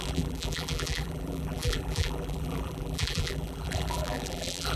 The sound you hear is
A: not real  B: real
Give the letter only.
A